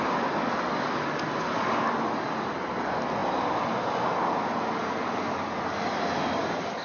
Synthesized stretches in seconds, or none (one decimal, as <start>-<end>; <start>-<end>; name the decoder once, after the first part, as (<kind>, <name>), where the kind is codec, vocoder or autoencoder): none